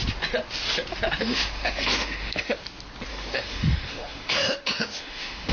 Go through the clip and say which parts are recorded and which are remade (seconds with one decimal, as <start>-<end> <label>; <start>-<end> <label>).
0.0-1.2 recorded; 1.2-2.6 remade; 2.6-3.1 recorded; 3.1-5.5 remade